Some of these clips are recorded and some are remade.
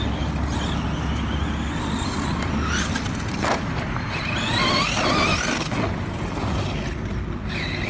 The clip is recorded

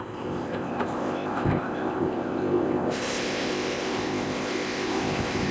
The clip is remade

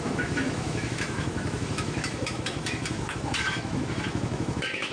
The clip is remade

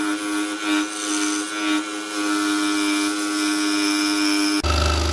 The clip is recorded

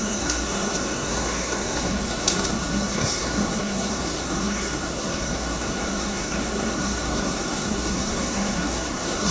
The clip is remade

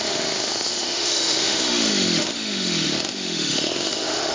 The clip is remade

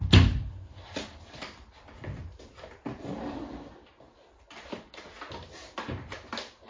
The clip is recorded